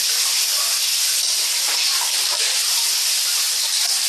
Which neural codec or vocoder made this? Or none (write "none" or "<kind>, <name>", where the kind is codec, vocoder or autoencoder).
none